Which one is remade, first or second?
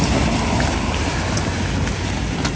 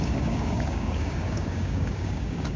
second